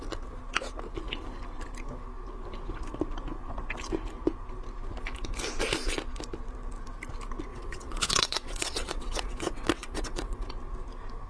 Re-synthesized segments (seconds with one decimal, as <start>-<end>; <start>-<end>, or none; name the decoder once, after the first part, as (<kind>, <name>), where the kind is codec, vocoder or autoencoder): 7.5-10.5 (vocoder, WaveNeXt)